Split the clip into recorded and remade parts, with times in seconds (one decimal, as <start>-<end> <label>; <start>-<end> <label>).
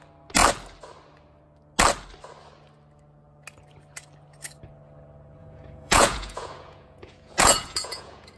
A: 0.0-5.4 recorded; 5.4-8.4 remade